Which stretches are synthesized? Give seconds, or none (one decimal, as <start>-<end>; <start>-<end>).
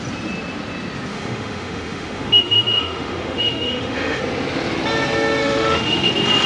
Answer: 1.1-4.2; 5.4-6.1